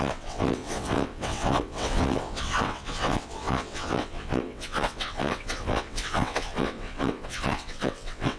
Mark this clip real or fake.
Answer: fake